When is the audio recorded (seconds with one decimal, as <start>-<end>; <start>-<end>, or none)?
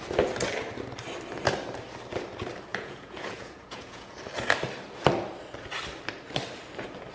0.0-2.7; 4.2-7.1